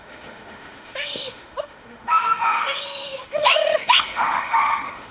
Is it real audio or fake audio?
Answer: fake